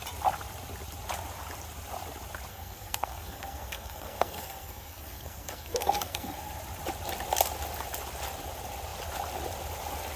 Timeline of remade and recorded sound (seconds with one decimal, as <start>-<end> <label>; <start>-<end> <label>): 0.0-2.5 recorded; 2.5-6.5 remade; 6.5-10.2 recorded